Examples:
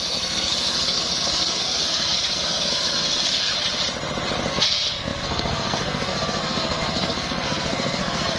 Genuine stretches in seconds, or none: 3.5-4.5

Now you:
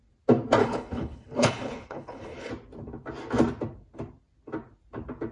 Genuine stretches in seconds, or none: 0.0-0.6; 2.5-5.3

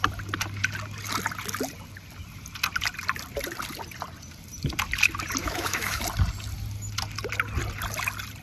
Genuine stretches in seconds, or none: 0.0-5.4; 6.0-8.4

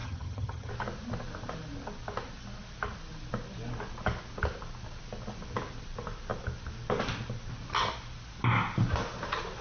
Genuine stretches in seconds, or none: 0.7-9.6

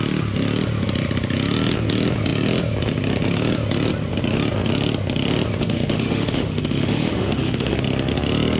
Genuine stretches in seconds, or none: 0.0-5.6; 7.8-8.6

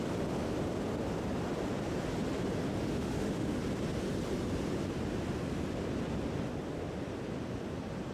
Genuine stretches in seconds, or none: 0.0-2.8; 3.6-8.1